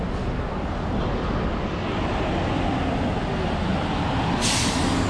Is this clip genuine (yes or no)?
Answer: yes